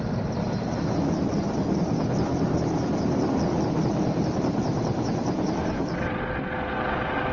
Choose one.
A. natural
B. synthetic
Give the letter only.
A